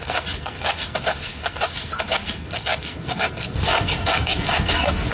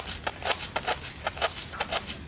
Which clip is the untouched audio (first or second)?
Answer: second